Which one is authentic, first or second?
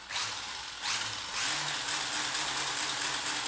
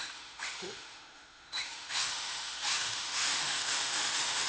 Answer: first